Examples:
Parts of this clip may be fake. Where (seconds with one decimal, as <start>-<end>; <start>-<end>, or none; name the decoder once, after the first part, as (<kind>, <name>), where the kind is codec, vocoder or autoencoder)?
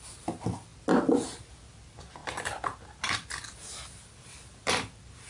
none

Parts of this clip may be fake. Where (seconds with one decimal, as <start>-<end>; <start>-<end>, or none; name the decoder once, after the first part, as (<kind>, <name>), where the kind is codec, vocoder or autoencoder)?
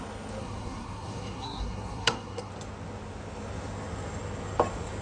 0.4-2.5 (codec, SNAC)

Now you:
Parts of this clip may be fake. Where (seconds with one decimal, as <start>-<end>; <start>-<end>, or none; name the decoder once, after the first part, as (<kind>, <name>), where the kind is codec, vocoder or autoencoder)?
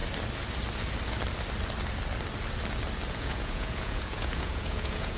3.1-5.2 (vocoder, Vocos)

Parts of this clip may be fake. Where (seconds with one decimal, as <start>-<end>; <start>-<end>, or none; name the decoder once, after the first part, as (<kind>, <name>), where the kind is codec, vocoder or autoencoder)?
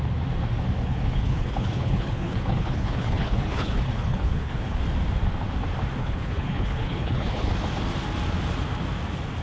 0.8-4.8 (codec, HILCodec); 6.0-7.5